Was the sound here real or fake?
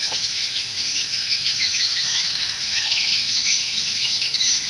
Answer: fake